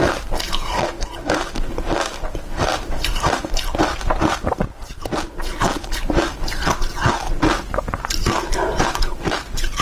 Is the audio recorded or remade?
recorded